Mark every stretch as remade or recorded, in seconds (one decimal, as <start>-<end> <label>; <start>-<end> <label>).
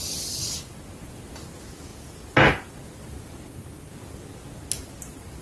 0.0-0.4 recorded; 0.4-1.1 remade; 1.1-5.4 recorded